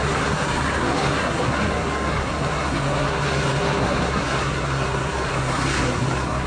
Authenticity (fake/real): fake